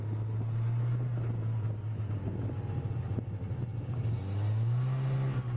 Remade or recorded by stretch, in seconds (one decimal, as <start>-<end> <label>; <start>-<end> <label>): 0.0-5.6 recorded